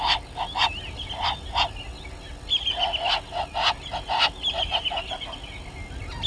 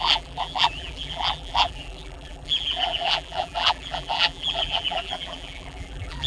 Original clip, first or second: first